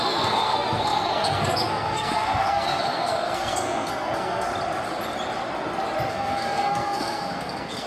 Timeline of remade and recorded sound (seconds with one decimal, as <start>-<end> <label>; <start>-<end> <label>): 0.0-4.5 remade; 4.5-6.1 recorded; 6.1-7.9 remade